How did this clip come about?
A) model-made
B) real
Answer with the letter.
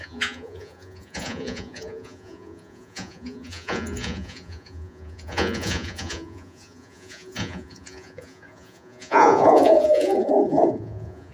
A